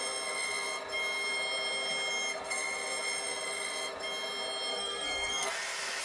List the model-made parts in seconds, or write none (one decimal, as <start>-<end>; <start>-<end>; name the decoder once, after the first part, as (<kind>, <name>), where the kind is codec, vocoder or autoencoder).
4.7-5.5 (codec, SNAC)